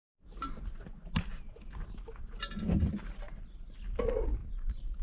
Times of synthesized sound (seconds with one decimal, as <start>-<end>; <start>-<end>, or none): 4.4-5.0